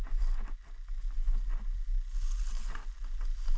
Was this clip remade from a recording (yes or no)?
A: no